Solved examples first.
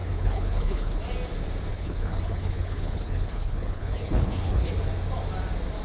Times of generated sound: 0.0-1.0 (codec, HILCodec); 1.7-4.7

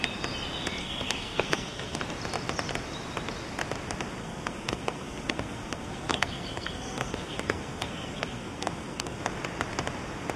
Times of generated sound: 0.8-2.0 (codec, SNAC); 4.2-9.2

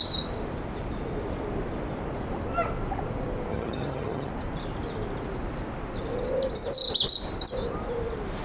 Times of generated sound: 3.5-4.3 (vocoder, HiFi-GAN)

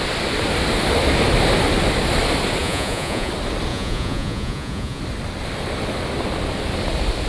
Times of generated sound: 2.6-3.3 (vocoder, Vocos); 3.7-5.0

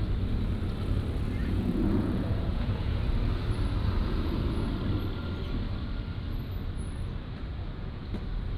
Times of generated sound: 1.4-3.0 (vocoder, Vocos); 4.0-4.7; 7.5-8.1

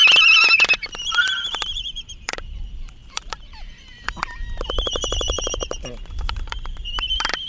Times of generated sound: 0.0-7.5 (vocoder, BigVGAN v2)

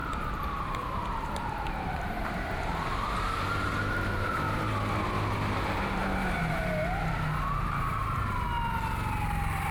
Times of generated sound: 0.0-4.7 (vocoder, BigVGAN v2)

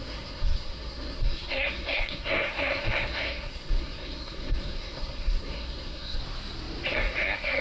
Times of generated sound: 0.0-6.2 (codec, SNAC); 6.9-7.6